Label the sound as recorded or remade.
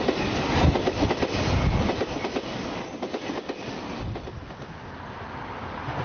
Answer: recorded